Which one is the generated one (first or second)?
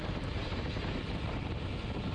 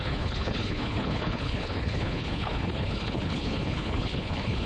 second